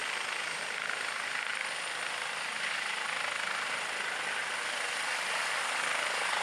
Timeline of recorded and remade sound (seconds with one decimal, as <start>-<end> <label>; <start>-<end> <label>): 0.0-6.4 recorded